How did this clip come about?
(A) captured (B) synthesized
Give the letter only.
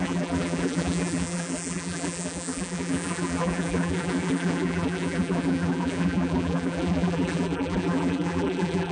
B